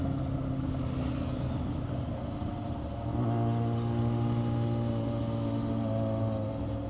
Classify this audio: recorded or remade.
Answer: recorded